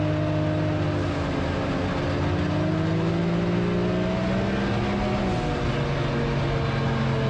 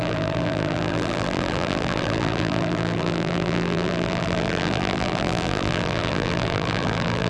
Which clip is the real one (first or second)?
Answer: first